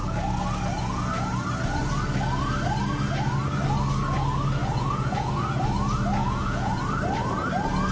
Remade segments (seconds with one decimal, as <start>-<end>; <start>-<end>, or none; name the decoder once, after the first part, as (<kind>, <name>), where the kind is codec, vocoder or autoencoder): 4.6-5.4 (vocoder, Vocos); 6.2-6.8